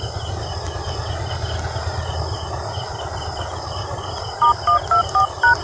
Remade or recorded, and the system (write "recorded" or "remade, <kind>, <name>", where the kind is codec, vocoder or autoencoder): recorded